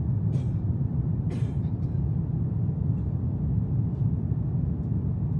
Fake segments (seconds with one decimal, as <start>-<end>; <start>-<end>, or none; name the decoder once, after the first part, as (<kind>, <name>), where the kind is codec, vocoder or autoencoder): none